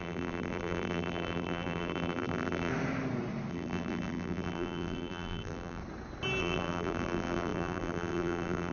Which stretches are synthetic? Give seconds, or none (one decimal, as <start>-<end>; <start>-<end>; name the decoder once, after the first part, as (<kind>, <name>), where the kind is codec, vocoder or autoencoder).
0.0-2.7 (vocoder, BigVGAN v2); 3.5-5.8; 6.4-8.7